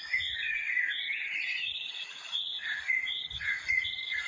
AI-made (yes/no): yes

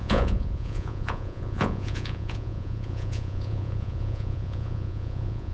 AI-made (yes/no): yes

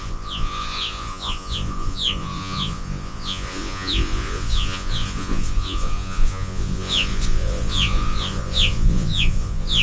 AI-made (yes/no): yes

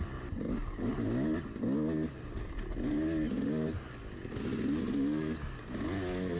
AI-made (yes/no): no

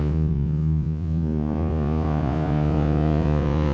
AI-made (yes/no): yes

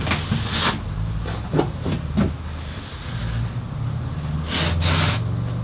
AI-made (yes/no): no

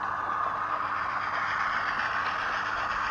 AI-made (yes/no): no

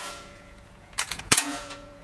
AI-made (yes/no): yes